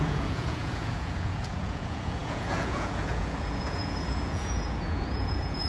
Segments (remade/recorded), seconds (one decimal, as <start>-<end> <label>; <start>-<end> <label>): 0.0-5.7 remade

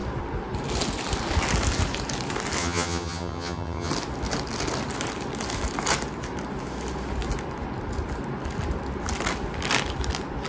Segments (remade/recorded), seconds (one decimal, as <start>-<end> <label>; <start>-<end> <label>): 0.0-2.6 recorded; 2.6-3.9 remade; 3.9-10.5 recorded

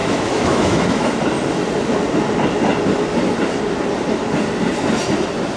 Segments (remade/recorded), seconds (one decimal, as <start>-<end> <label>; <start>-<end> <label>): 0.0-1.1 remade; 1.1-5.6 recorded

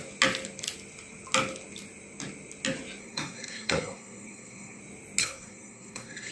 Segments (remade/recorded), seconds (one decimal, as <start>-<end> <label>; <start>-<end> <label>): 0.0-3.0 recorded; 3.0-4.8 remade; 4.8-5.2 recorded; 5.2-6.3 remade

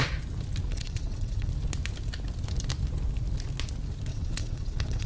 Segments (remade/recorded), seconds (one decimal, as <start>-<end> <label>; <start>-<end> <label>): 0.0-0.7 recorded; 0.7-1.5 remade; 1.5-4.1 recorded; 4.1-5.1 remade

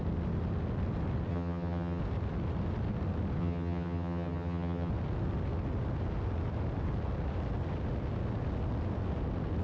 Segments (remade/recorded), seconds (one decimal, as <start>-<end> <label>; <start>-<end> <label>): 0.0-1.3 recorded; 1.3-2.0 remade; 2.0-3.4 recorded; 3.4-4.9 remade; 4.9-9.6 recorded